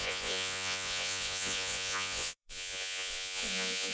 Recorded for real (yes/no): no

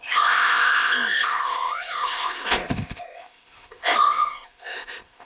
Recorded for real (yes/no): no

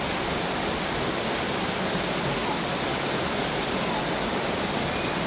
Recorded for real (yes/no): yes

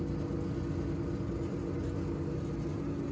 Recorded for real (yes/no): yes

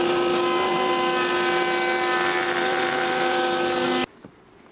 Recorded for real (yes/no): yes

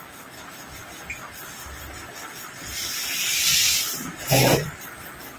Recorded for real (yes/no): yes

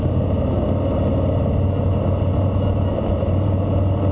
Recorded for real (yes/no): yes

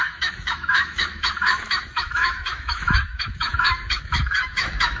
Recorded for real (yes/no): no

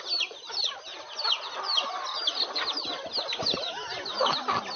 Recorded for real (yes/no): no